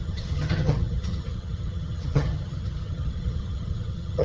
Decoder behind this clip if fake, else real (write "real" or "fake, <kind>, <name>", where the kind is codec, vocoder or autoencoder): fake, vocoder, HiFi-GAN